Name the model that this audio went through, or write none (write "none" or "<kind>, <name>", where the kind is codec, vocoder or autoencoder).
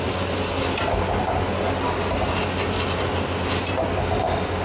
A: none